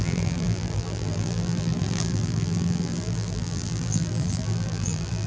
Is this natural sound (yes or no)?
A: no